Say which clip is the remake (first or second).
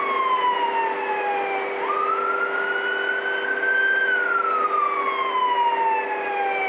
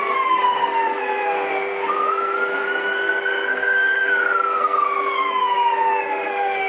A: second